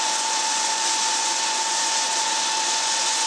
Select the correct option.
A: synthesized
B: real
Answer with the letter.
A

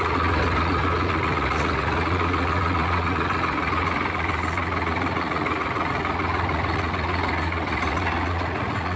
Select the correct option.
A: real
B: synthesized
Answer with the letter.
B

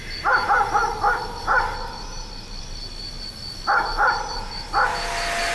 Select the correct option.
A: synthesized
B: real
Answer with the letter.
B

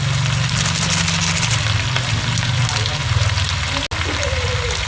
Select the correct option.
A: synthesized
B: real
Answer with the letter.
B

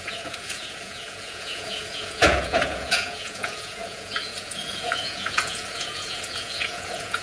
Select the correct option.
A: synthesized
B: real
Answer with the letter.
A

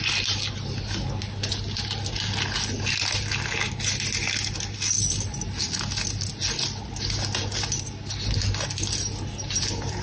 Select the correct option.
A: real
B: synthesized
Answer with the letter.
A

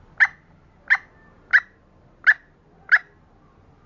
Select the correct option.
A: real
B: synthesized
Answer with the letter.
A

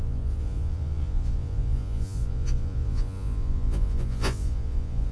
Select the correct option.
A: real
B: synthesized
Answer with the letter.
B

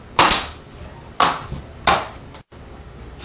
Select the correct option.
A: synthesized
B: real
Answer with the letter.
B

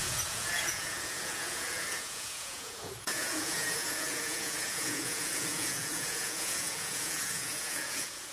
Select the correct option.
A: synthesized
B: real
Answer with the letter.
A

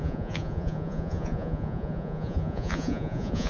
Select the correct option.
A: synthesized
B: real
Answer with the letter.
A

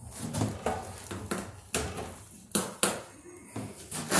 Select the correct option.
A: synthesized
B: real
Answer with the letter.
B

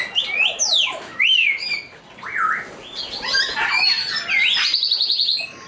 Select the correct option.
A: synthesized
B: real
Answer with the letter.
B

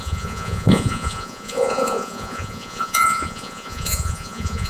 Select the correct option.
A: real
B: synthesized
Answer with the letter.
B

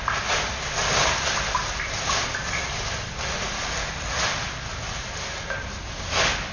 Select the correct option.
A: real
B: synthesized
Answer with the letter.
A